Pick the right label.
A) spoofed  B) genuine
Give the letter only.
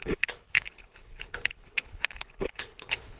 A